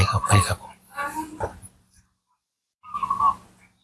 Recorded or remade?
recorded